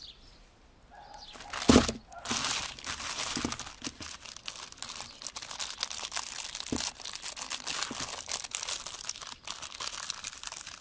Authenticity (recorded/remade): recorded